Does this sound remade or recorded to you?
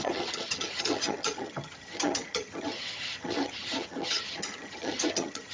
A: remade